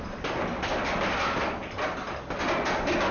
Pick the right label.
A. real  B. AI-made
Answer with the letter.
A